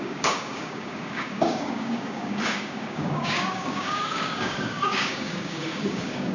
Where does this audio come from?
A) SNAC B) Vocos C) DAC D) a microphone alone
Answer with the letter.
C